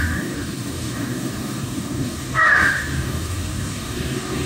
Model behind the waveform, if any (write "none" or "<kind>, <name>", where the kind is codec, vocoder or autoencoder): codec, DAC